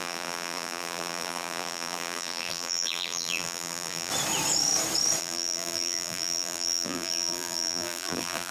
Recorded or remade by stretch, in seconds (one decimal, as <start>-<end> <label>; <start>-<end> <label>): 0.0-4.1 remade; 4.1-5.2 recorded; 5.2-8.5 remade